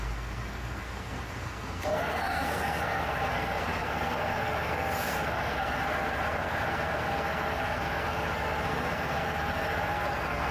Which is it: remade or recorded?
remade